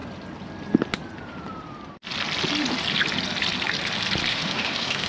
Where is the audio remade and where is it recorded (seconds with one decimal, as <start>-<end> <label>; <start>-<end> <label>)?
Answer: 0.0-4.3 recorded; 4.3-5.1 remade